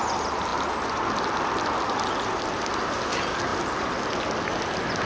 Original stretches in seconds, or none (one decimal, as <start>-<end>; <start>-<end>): 0.0-5.1